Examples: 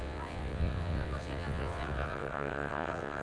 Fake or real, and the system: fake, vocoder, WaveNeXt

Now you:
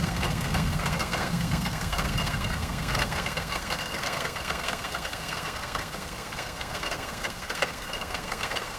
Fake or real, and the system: fake, codec, SNAC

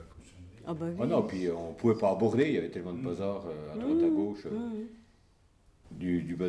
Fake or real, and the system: real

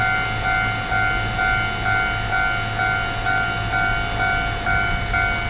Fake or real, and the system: real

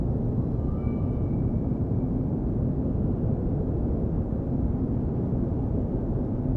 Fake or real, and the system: real